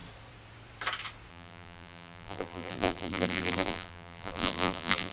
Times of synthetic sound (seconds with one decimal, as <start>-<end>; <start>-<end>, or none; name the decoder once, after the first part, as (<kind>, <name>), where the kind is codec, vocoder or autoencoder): 1.3-5.1 (vocoder, BigVGAN v2)